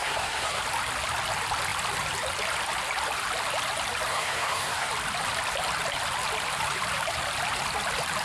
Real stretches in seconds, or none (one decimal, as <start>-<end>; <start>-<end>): 0.6-4.1; 4.9-8.2